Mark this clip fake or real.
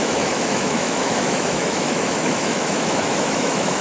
fake